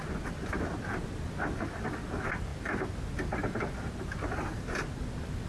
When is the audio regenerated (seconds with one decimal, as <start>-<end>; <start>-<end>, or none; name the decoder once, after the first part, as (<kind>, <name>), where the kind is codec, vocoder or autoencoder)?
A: none